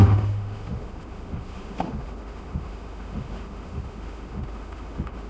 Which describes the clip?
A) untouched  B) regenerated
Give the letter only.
B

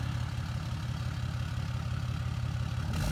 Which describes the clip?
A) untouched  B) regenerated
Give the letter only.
A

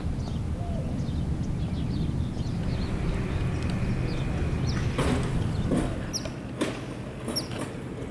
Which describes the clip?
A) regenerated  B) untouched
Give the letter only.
B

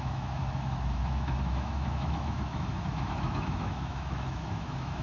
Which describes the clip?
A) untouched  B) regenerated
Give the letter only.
B